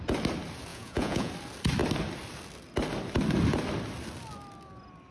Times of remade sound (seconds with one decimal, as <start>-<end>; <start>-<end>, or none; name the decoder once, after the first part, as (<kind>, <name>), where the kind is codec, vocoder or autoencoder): 0.7-1.3 (vocoder, Vocos)